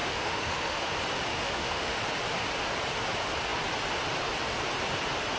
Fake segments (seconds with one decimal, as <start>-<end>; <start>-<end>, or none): 0.0-0.9; 1.3-2.0